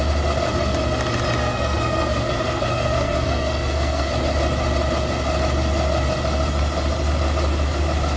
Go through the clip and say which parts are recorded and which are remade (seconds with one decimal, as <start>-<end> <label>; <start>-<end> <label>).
0.0-1.4 recorded; 1.4-4.1 remade; 4.1-8.2 recorded